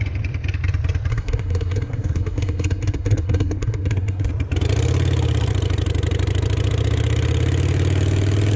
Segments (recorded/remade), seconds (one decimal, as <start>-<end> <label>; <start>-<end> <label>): 0.0-1.1 recorded; 1.1-4.3 remade; 4.3-8.6 recorded